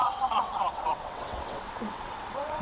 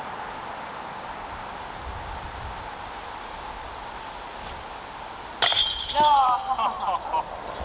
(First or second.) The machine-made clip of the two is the first